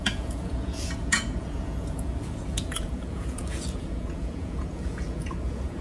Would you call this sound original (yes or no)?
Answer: no